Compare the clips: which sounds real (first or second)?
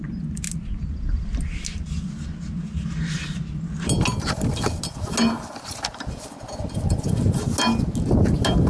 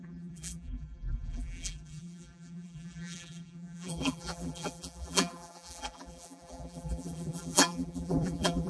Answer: first